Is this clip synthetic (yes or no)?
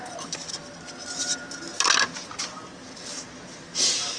no